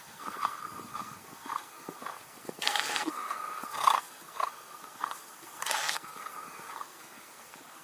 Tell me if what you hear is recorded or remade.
remade